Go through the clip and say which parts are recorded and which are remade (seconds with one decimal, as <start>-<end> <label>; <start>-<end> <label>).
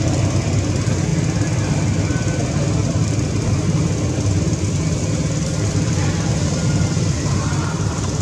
0.0-8.2 recorded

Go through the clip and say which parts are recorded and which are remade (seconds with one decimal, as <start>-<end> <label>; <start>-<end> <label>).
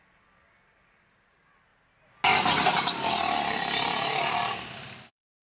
0.0-5.4 recorded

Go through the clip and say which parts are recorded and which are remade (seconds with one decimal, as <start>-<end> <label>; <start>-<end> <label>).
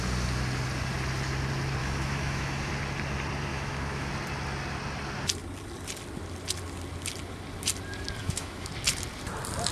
0.0-1.8 recorded; 1.8-2.7 remade; 2.7-3.5 recorded; 3.5-4.1 remade; 4.1-8.2 recorded; 8.2-8.7 remade; 8.7-9.7 recorded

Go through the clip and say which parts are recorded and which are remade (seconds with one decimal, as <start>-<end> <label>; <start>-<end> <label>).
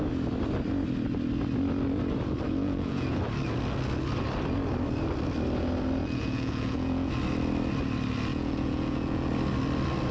0.0-2.6 recorded; 2.6-3.2 remade; 3.2-6.0 recorded; 6.0-7.1 remade; 7.1-8.3 recorded; 8.3-9.3 remade; 9.3-10.1 recorded